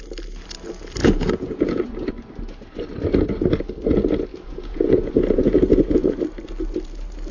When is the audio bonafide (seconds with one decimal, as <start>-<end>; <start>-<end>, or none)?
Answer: 0.0-1.0; 2.1-4.3; 6.2-7.3